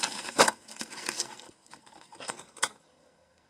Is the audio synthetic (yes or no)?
yes